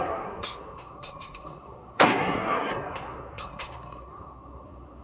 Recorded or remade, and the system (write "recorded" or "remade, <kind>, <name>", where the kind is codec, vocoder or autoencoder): remade, codec, SNAC